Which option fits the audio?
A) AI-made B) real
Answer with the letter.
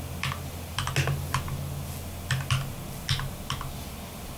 B